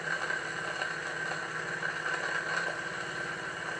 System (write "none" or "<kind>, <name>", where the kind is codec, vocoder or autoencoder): none